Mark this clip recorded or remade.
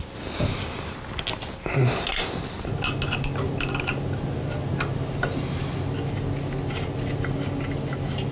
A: recorded